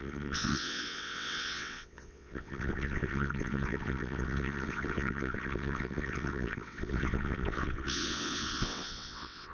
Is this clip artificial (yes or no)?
yes